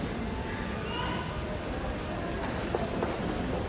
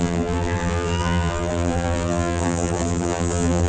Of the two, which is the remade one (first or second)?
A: second